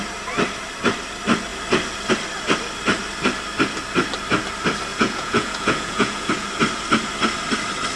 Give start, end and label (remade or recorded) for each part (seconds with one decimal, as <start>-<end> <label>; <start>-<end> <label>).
0.0-4.9 recorded; 4.9-6.3 remade; 6.3-8.0 recorded